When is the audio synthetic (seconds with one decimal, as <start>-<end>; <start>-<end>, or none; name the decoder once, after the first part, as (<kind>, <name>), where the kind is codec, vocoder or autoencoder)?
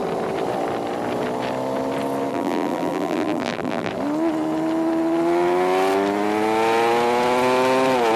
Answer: 2.3-3.9 (vocoder, BigVGAN v2)